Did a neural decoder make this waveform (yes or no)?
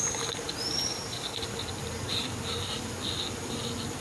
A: no